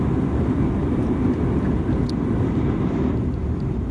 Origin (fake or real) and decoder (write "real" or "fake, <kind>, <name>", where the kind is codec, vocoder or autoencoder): fake, vocoder, BigVGAN v2